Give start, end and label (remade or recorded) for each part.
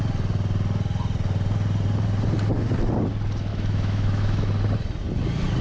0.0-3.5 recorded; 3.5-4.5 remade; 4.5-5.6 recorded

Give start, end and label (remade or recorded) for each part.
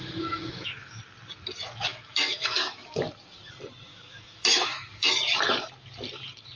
0.0-1.0 remade; 1.0-1.9 recorded; 1.9-3.0 remade; 3.0-3.9 recorded; 3.9-5.1 remade; 5.1-6.6 recorded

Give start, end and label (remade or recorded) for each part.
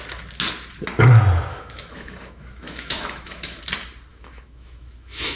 0.0-1.5 recorded; 1.5-3.6 remade; 3.6-4.1 recorded; 4.1-5.4 remade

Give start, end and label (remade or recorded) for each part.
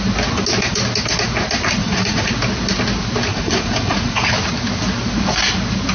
0.0-1.8 recorded; 1.8-2.3 remade; 2.3-3.3 recorded; 3.3-4.3 remade; 4.3-5.9 recorded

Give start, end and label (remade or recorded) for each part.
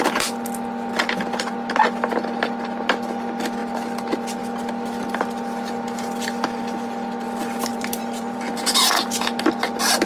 0.0-7.7 recorded; 7.7-8.5 remade; 8.5-10.1 recorded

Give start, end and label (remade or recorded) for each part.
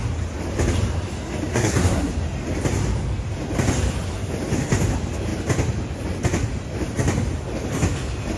0.0-1.5 recorded; 1.5-2.1 remade; 2.1-8.4 recorded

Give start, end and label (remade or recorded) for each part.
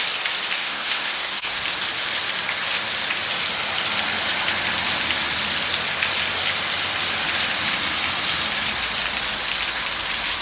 0.0-0.6 recorded; 0.6-1.6 remade; 1.6-10.4 recorded